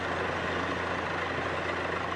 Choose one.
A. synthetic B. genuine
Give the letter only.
B